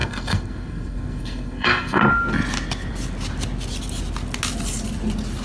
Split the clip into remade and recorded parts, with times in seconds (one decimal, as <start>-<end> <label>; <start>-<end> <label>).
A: 0.0-2.0 remade; 2.0-5.4 recorded